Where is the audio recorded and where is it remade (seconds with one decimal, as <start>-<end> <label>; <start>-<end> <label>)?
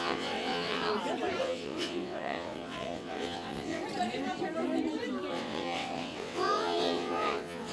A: 0.0-0.9 remade; 0.9-1.4 recorded; 1.4-3.8 remade; 3.8-5.3 recorded; 5.3-7.7 remade